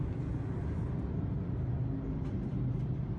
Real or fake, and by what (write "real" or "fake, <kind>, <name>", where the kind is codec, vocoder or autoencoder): real